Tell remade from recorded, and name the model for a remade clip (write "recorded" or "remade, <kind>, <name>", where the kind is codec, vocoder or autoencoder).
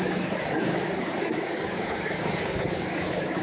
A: remade, codec, DAC